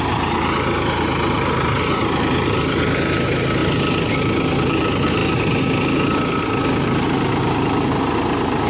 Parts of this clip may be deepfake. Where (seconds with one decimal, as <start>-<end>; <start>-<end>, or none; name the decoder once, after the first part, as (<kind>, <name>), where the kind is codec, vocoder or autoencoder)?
none